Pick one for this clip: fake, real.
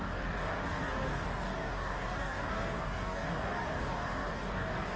fake